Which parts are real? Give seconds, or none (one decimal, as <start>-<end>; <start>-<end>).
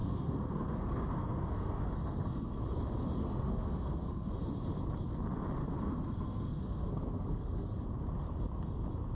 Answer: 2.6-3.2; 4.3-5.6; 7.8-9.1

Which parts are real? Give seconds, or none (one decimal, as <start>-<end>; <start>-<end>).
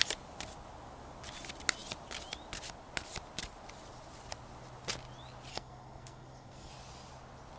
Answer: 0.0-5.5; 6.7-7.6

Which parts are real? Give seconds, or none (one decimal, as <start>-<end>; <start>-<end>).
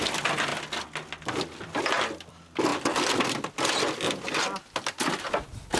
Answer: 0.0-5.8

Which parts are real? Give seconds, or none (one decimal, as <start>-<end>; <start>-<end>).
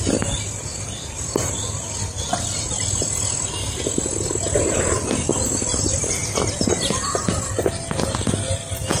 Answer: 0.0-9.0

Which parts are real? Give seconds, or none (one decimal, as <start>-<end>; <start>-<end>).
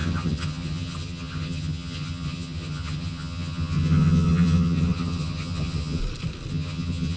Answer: 6.0-6.5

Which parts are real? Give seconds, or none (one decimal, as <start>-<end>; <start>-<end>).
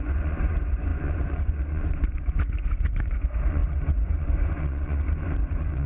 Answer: none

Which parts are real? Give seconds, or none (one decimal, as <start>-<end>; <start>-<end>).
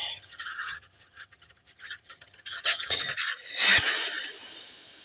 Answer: 3.0-5.0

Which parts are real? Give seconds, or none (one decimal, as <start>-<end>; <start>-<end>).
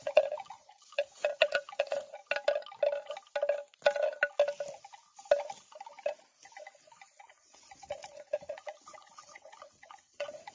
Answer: 2.2-7.2